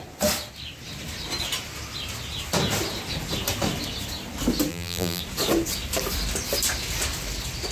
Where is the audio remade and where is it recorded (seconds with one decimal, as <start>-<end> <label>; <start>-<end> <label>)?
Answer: 0.0-4.7 recorded; 4.7-5.2 remade; 5.2-7.7 recorded